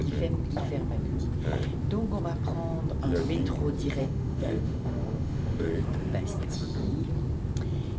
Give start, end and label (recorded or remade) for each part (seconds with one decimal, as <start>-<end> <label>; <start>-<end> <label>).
0.0-4.0 recorded; 4.0-5.7 remade; 5.7-8.0 recorded